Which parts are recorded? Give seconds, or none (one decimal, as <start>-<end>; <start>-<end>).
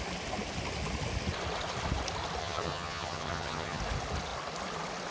0.0-2.4; 3.8-5.1